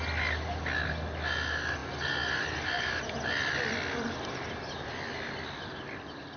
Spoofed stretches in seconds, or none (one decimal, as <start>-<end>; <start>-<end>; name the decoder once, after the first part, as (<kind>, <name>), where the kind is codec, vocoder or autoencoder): none